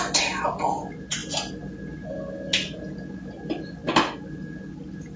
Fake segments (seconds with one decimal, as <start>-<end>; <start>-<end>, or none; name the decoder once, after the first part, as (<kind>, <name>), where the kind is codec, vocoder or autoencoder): none